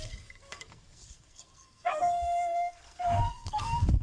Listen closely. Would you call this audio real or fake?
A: fake